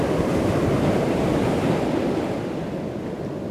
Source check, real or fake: fake